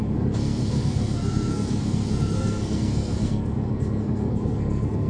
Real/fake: fake